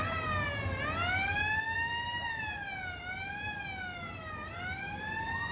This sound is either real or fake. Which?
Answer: real